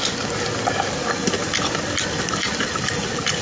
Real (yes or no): yes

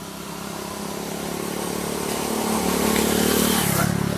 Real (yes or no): yes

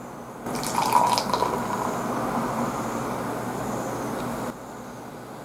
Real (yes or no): yes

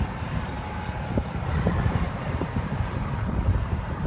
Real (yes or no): no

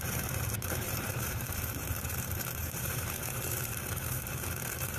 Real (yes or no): no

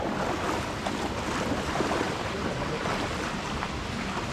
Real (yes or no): yes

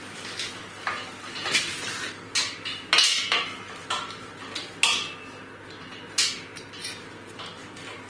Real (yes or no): yes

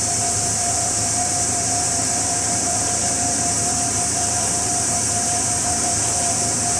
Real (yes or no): no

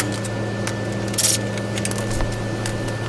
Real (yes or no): yes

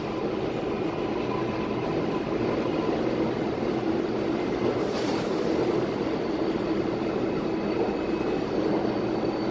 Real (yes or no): yes